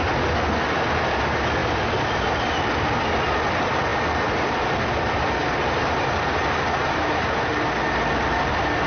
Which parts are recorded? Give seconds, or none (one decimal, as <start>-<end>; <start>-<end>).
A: 0.0-8.9